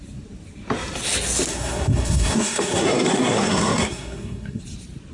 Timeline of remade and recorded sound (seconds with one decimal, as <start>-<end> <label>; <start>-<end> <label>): 0.0-1.5 recorded; 1.5-4.6 remade; 4.6-5.1 recorded